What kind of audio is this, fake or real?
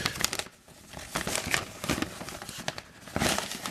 real